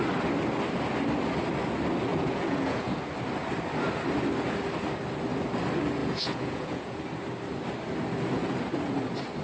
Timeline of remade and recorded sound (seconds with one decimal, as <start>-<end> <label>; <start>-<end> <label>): 0.0-2.1 recorded; 2.1-3.0 remade; 3.0-6.0 recorded; 6.0-7.0 remade; 7.0-9.4 recorded